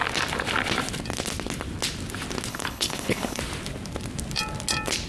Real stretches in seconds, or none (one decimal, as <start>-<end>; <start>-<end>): 0.0-2.5; 3.4-5.1